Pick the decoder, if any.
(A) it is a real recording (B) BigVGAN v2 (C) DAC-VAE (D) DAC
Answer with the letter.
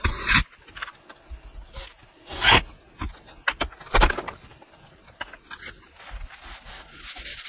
A